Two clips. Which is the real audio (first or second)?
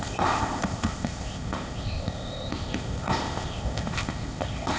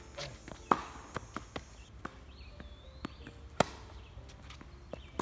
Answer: second